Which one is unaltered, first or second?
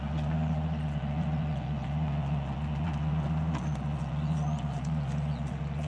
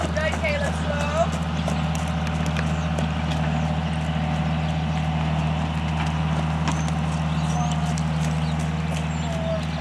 second